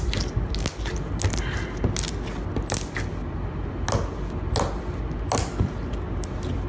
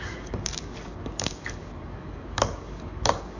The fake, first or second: second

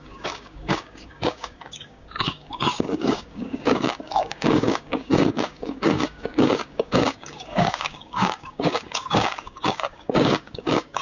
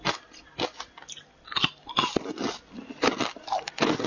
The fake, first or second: first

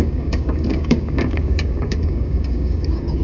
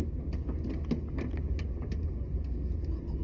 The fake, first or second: first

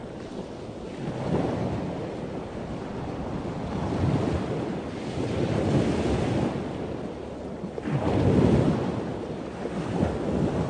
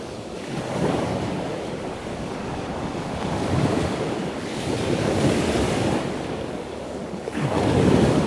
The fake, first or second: second